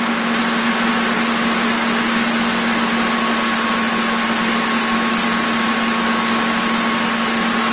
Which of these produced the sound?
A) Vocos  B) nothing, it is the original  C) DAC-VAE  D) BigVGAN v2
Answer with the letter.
B